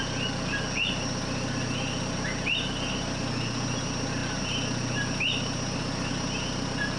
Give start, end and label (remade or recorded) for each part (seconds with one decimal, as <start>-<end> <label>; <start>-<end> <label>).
0.0-7.0 recorded